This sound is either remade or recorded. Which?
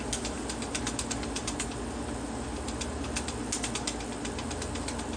recorded